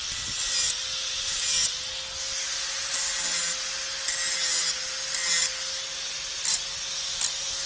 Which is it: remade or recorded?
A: recorded